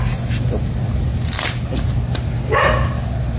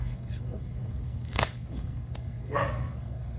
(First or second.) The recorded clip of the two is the first